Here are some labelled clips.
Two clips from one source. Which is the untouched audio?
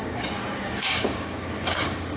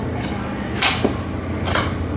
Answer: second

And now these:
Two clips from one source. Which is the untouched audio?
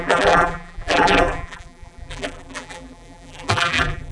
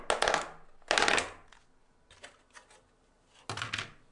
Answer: second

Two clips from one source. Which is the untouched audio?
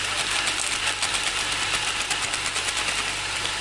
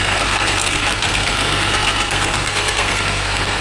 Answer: first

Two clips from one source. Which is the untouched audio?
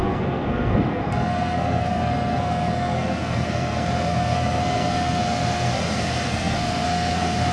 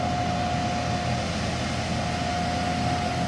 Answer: second